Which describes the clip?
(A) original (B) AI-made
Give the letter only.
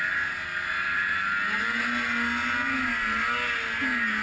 A